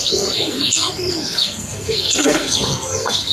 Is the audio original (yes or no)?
no